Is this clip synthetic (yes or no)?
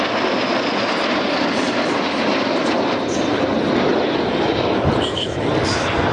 no